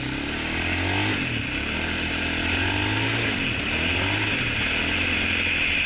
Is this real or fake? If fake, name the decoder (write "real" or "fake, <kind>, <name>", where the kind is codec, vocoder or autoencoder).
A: real